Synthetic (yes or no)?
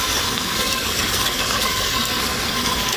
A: yes